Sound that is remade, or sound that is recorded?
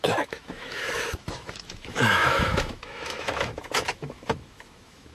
remade